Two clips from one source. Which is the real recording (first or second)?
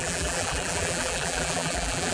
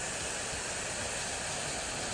second